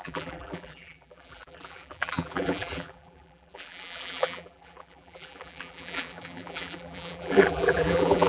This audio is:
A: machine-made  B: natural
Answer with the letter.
A